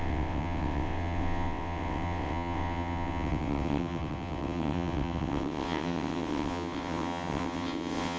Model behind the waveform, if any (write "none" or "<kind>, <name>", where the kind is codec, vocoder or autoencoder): vocoder, WaveNeXt